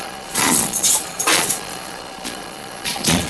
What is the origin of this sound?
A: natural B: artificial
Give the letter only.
B